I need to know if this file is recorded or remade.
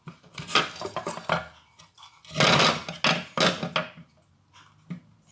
recorded